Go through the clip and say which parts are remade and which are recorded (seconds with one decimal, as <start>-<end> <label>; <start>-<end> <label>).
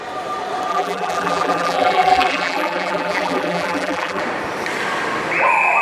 0.0-0.7 recorded; 0.7-4.2 remade; 4.2-5.8 recorded